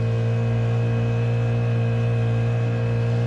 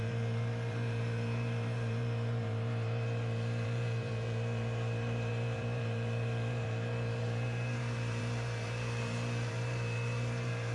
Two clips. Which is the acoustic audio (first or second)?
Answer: first